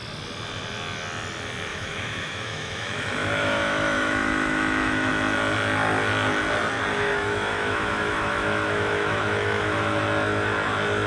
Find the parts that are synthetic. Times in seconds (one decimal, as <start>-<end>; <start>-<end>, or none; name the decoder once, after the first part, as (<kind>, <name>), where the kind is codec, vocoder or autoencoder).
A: 1.7-5.1 (autoencoder, DAC-VAE); 6.9-10.0